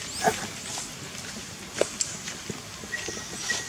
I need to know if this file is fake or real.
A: real